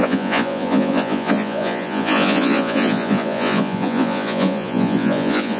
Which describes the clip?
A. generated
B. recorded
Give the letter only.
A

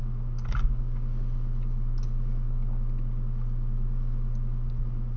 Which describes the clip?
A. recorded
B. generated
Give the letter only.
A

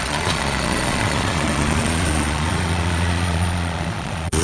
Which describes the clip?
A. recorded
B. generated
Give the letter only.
B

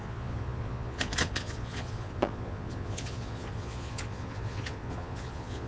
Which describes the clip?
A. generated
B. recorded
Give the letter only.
A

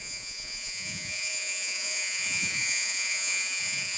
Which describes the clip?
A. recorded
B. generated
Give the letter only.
B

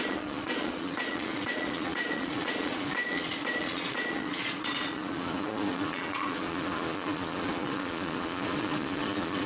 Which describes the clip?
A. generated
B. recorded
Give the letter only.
A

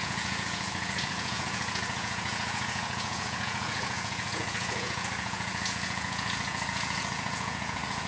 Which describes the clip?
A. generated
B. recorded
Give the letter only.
A